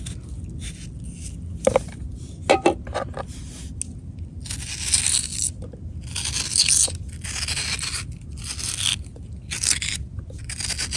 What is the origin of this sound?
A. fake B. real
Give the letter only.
B